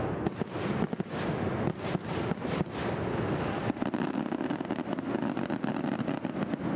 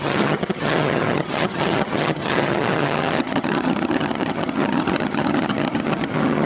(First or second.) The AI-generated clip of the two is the second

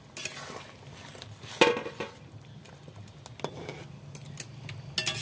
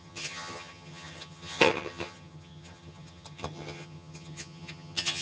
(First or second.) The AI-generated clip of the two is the second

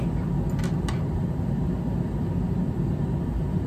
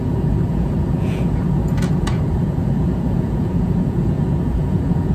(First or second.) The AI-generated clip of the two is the second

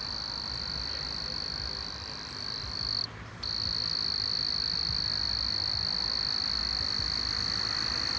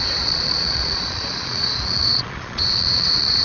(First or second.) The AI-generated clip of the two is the second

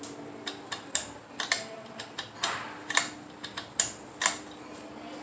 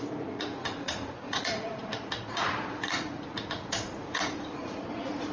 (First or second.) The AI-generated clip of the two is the second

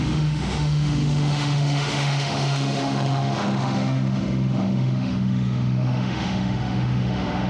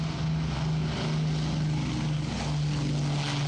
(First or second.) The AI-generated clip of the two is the first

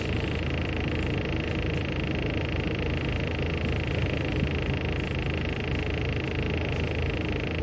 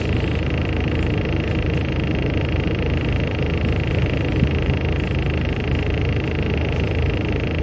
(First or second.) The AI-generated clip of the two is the second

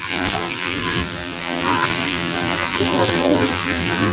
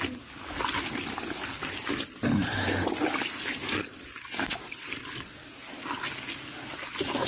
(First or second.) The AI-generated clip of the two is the first